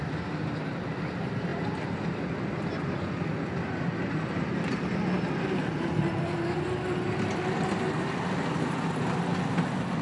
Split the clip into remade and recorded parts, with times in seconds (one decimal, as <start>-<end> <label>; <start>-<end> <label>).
0.0-10.0 recorded